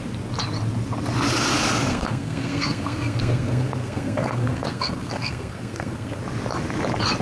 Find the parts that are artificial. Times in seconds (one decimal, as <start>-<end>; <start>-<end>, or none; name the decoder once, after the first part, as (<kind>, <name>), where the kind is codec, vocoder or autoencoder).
1.9-6.2 (codec, SNAC)